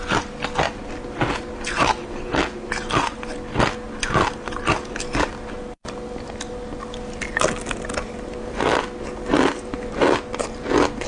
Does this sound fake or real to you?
real